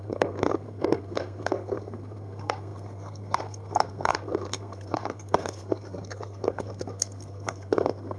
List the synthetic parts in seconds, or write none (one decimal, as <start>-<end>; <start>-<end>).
0.0-8.2